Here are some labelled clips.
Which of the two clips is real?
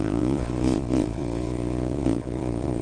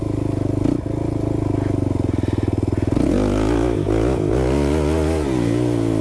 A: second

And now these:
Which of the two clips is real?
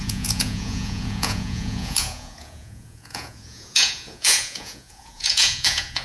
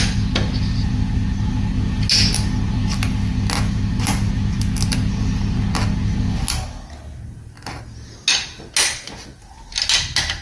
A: second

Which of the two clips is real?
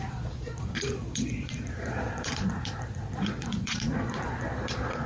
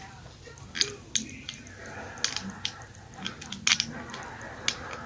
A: second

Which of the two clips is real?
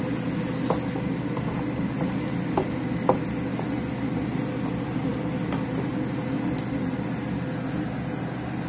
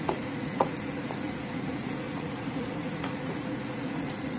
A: first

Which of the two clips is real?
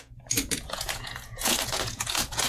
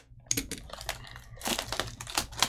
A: second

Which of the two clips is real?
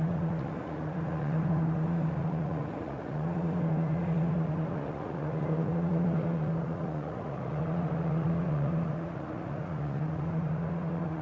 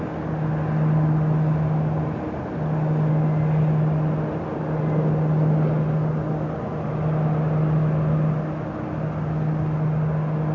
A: second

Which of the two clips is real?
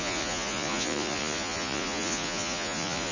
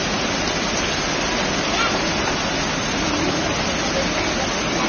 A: second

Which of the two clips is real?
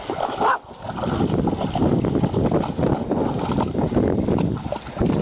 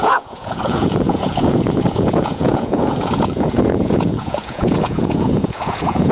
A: first